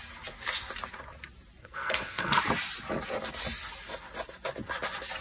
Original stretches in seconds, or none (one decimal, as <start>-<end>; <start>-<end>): 0.0-1.6; 2.4-5.2